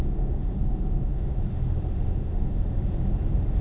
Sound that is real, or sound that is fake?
fake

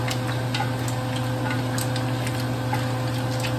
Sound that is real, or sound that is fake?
real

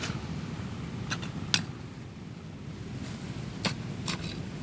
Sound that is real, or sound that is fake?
real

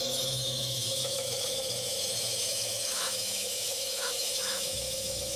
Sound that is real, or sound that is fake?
fake